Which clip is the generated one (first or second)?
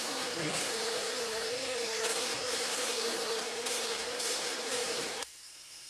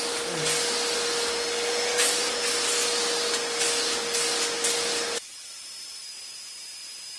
first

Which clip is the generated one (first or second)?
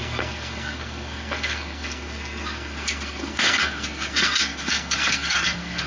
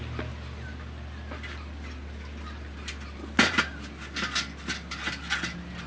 first